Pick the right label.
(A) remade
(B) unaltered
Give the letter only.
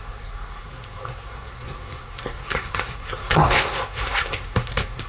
A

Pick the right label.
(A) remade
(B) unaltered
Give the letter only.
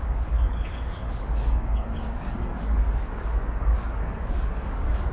A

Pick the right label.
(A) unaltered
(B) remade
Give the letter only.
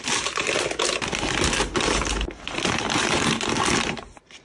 A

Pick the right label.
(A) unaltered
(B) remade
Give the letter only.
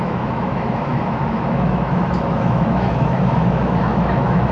B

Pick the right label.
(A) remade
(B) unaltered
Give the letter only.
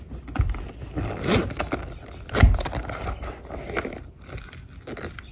B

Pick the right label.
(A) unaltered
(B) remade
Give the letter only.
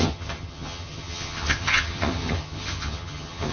B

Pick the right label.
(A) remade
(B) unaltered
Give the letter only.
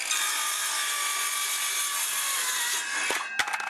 B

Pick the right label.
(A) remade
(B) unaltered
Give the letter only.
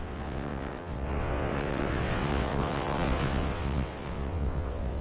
A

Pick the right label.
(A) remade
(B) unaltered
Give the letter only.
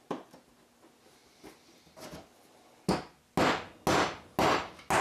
B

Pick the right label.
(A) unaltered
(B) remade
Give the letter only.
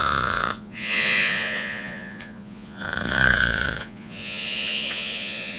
B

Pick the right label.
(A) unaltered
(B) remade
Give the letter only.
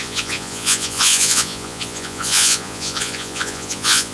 B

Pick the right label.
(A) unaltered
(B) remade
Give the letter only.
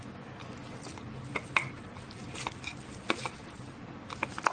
A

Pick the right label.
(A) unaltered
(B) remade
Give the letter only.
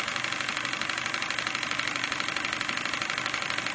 A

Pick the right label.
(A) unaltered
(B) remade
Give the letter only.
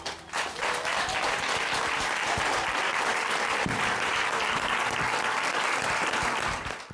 B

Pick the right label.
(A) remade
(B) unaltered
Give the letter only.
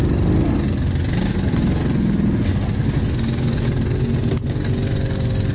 B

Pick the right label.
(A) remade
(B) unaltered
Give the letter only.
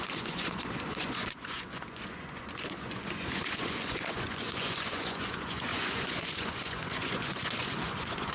A